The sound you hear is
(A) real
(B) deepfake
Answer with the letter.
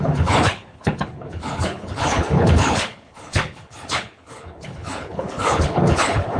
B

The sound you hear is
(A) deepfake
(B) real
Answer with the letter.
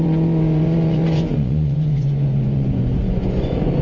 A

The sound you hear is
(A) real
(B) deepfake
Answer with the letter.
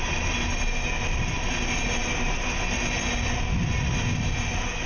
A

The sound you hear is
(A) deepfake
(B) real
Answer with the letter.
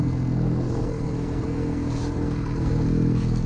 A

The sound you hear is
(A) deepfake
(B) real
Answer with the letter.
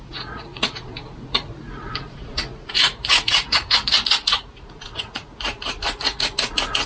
A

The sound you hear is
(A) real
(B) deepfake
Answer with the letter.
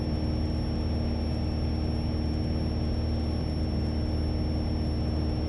A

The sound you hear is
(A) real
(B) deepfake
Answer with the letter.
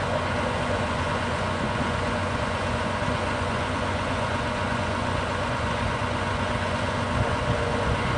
B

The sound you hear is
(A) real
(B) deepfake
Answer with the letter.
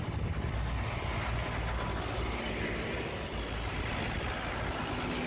A